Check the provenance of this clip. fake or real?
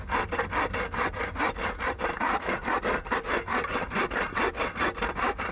real